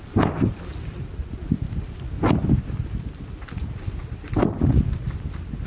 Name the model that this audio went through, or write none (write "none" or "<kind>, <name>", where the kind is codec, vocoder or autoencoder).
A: none